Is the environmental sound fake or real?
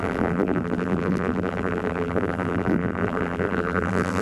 fake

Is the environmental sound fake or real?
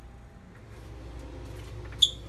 real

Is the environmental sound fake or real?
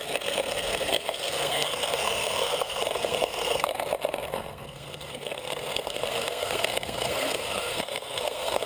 fake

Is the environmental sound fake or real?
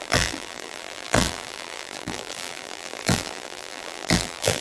fake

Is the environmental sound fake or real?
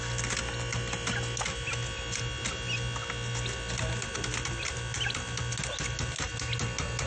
real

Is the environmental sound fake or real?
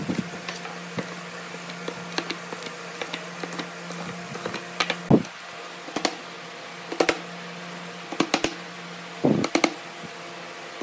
real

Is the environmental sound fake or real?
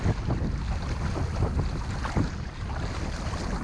real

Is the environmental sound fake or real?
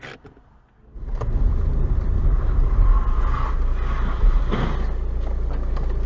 real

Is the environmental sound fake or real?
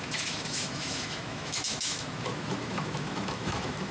fake